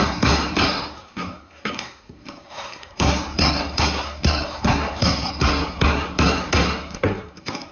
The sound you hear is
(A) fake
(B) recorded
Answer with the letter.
A